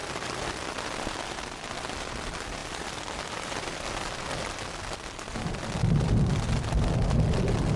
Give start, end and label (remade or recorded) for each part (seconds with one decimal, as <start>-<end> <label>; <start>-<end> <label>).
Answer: 0.0-7.8 recorded